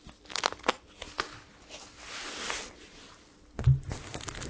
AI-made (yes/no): no